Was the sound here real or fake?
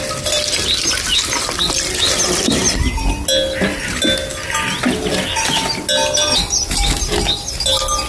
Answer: real